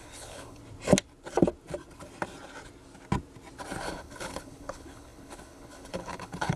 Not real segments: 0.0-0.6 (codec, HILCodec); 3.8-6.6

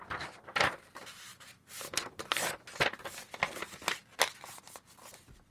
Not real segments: none

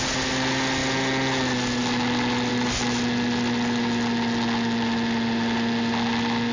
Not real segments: none

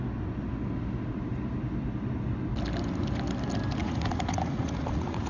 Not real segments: 3.8-5.3 (vocoder, Vocos)